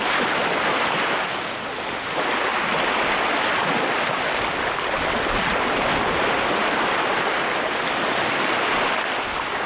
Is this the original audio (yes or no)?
yes